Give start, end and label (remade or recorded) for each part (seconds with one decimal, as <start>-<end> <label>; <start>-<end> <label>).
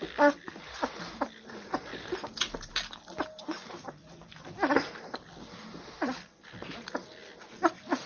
0.0-8.1 recorded